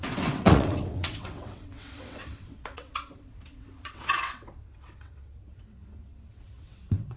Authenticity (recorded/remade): remade